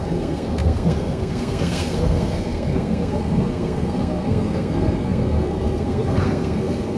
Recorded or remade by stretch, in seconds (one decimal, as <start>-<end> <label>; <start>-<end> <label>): 0.0-7.0 remade